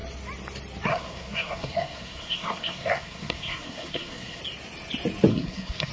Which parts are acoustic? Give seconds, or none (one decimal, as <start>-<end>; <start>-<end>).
0.0-0.9; 4.4-5.3